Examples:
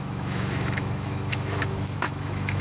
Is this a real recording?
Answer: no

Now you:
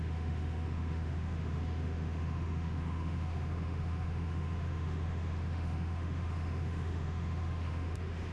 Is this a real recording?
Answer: no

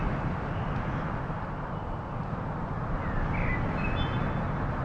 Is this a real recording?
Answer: yes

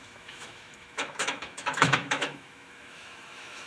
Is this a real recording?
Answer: no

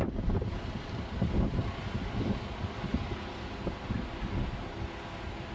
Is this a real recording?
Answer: yes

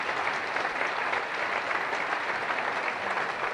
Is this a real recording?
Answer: yes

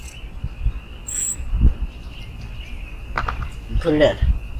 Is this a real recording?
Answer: yes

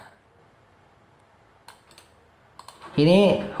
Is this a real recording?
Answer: yes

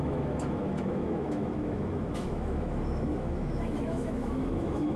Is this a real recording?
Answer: no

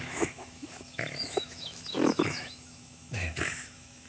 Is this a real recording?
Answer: no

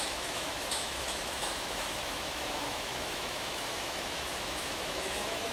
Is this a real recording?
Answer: no